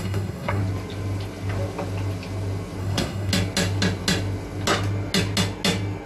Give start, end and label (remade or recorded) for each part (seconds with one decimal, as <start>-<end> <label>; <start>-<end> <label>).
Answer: 0.0-0.6 remade; 0.6-2.8 recorded; 2.8-3.3 remade; 3.3-6.1 recorded